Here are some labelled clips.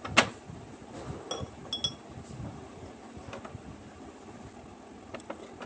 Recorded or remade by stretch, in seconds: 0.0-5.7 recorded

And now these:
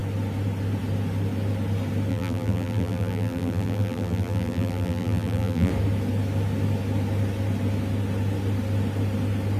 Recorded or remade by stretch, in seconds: 0.0-2.1 recorded; 2.1-5.7 remade; 5.7-9.6 recorded